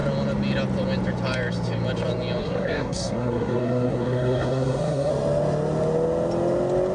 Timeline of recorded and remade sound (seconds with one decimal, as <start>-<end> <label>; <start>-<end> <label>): 0.0-2.4 recorded; 2.4-5.1 remade; 5.1-6.9 recorded